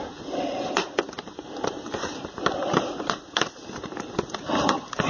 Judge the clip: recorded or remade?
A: remade